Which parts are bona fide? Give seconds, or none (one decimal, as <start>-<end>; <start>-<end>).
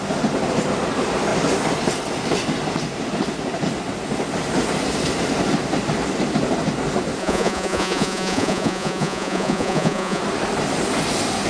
0.0-7.2; 10.2-11.5